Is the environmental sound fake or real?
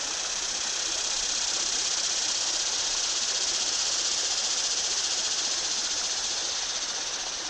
fake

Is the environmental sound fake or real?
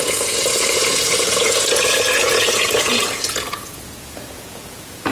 fake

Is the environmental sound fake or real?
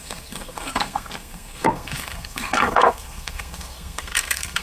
fake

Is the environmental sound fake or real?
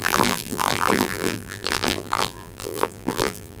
fake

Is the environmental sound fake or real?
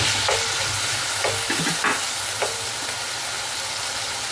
real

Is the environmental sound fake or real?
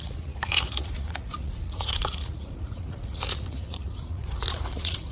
fake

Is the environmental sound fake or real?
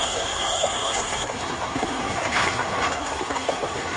fake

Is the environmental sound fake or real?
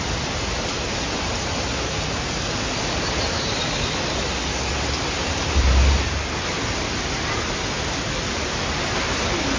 real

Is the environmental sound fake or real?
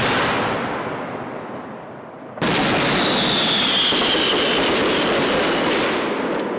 real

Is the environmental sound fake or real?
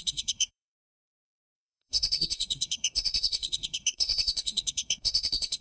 fake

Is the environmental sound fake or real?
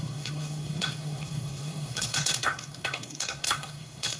fake